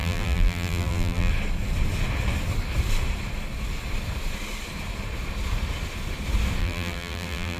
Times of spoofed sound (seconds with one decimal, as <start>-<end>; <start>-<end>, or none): 0.0-1.3; 6.6-7.6

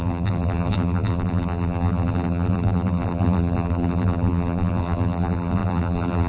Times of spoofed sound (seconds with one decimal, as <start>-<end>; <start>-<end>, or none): 0.0-6.3